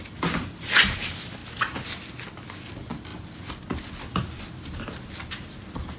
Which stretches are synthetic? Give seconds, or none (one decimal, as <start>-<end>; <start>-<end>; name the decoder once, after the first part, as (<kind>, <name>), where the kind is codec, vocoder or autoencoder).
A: none